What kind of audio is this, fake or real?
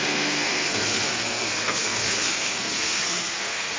fake